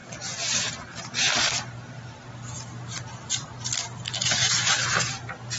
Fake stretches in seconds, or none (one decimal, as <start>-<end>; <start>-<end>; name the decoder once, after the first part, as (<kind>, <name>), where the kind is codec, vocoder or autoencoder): none